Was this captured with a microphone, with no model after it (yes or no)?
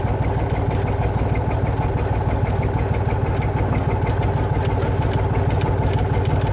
yes